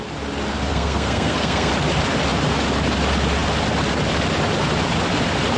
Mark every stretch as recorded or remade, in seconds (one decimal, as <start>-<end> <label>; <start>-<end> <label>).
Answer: 0.0-0.7 recorded; 0.7-1.7 remade; 1.7-5.6 recorded